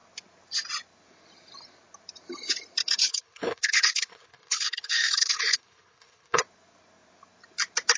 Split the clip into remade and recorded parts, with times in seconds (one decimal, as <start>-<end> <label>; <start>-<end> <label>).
0.0-3.1 recorded; 3.1-6.4 remade; 6.4-8.0 recorded